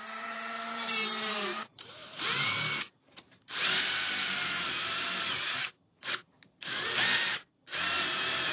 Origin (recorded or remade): remade